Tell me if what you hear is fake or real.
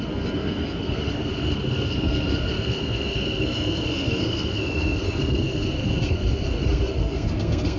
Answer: fake